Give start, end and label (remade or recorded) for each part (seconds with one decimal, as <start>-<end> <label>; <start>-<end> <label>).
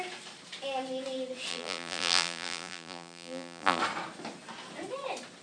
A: 0.0-1.5 recorded; 1.5-3.8 remade; 3.8-5.4 recorded